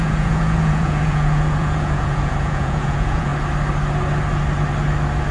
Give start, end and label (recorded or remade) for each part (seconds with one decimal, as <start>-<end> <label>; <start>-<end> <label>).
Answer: 0.0-3.3 remade; 3.3-5.3 recorded